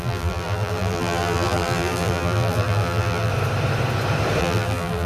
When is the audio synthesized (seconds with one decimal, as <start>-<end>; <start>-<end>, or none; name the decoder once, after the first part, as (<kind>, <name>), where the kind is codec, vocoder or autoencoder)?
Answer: 0.0-3.3 (vocoder, BigVGAN v2); 4.4-5.1